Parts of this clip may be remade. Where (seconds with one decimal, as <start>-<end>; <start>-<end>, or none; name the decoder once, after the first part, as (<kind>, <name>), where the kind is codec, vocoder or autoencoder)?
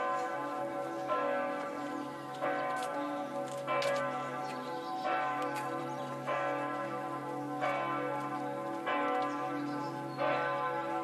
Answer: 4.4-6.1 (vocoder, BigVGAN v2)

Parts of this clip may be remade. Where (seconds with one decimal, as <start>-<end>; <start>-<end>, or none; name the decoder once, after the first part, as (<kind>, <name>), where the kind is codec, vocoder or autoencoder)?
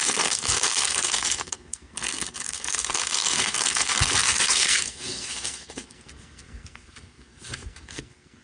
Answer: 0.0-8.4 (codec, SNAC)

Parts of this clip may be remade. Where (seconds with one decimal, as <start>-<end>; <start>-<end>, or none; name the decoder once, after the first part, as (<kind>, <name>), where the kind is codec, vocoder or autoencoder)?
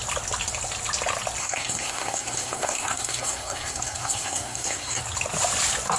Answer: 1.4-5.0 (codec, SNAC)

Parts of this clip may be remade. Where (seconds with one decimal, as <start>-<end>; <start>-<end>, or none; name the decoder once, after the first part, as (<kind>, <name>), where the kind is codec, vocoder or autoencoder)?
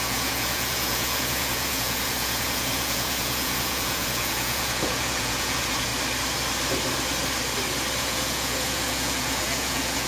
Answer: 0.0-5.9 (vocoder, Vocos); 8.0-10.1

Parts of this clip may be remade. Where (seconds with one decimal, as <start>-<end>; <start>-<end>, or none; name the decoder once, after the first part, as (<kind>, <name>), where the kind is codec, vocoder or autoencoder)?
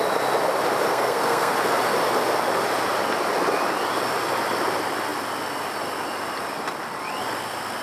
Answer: 0.9-1.5 (codec, SNAC)